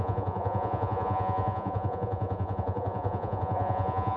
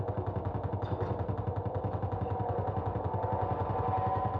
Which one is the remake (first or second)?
first